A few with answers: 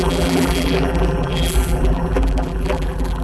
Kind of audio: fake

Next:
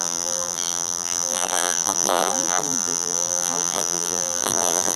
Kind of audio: fake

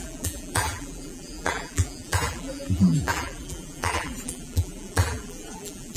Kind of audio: fake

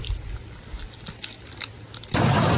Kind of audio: real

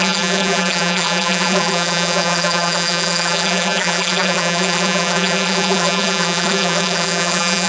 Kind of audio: fake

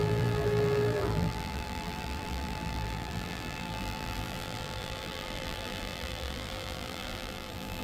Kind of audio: fake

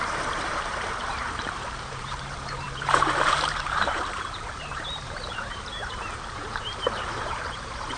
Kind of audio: fake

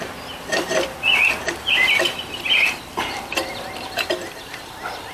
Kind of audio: fake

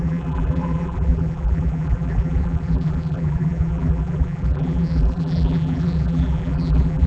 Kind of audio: fake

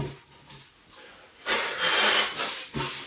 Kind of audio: real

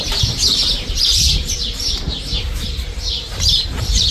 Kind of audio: fake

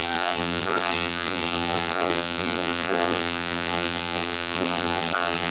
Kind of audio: fake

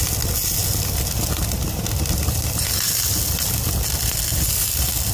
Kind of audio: real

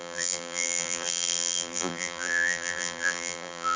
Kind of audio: fake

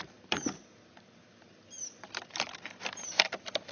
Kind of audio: fake